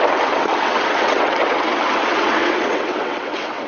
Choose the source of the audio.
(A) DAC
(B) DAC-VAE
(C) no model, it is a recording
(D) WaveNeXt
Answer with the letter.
D